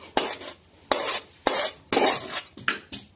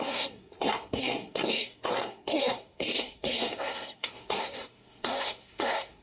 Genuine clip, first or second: first